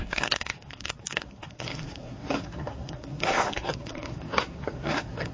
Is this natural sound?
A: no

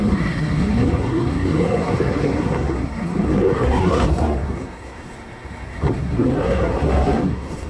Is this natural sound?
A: no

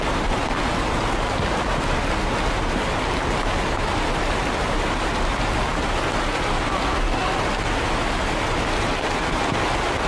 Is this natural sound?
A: yes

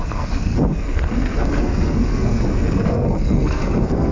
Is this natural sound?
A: no